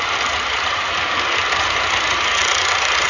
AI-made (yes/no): no